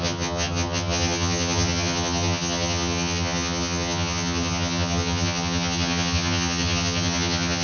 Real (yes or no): no